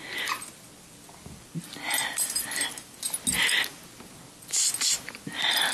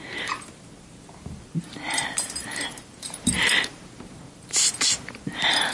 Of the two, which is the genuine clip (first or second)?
first